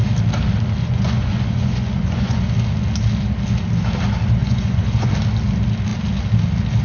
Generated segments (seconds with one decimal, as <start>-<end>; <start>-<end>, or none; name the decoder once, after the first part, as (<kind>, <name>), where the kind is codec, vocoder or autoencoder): 0.8-2.5 (vocoder, Vocos); 4.4-5.1